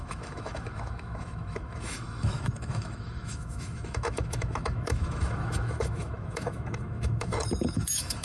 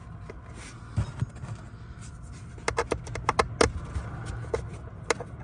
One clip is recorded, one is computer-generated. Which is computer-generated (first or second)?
first